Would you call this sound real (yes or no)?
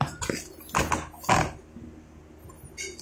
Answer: yes